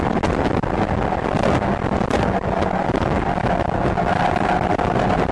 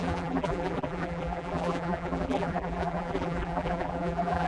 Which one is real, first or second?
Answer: first